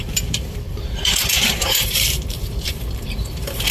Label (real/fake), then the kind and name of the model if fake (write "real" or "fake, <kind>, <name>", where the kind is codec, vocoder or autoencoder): fake, vocoder, BigVGAN v2